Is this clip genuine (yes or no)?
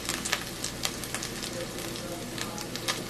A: yes